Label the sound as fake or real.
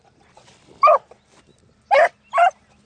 real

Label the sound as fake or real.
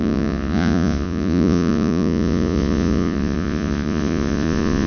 fake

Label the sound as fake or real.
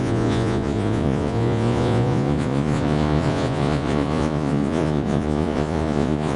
fake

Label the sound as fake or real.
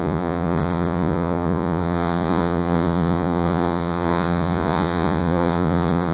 fake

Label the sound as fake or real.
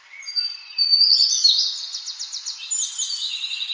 real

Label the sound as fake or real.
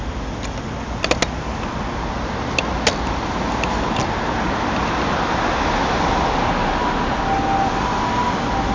real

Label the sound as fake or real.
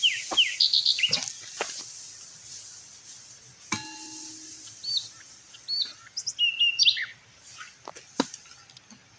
real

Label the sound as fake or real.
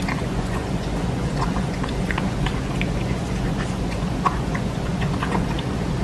fake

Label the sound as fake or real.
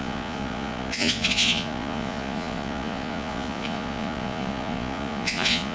fake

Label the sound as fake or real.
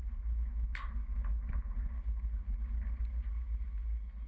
real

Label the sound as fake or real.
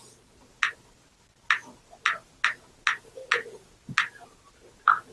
real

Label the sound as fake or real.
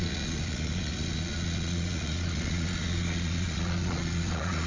fake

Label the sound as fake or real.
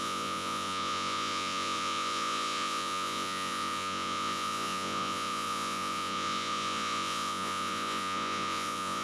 fake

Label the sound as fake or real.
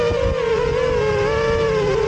real